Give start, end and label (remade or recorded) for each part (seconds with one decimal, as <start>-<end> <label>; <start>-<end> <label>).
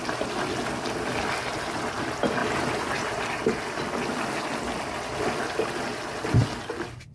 0.0-2.4 recorded; 2.4-3.8 remade; 3.8-7.1 recorded